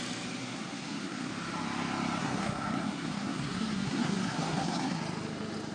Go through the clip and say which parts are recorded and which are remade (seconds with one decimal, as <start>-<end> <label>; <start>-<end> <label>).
0.0-0.4 recorded; 0.4-1.3 remade; 1.3-2.2 recorded; 2.2-5.0 remade; 5.0-5.7 recorded